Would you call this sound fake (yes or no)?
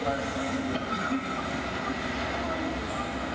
no